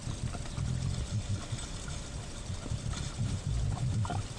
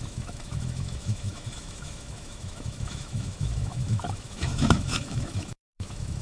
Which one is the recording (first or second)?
first